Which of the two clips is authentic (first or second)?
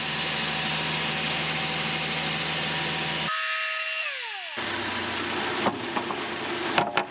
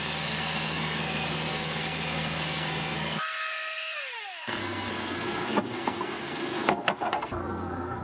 first